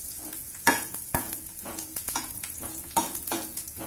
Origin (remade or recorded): remade